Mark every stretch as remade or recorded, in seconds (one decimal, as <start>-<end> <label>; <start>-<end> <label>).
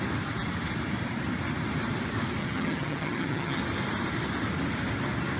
0.0-2.4 recorded; 2.4-3.6 remade; 3.6-5.4 recorded